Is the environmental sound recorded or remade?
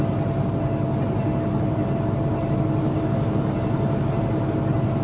recorded